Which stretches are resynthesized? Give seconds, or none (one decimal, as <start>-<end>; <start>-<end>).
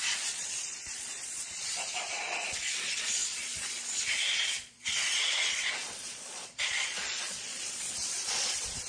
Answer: 0.0-8.9